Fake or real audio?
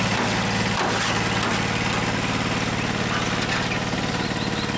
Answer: real